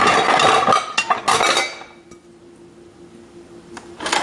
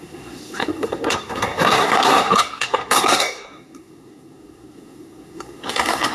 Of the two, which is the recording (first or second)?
first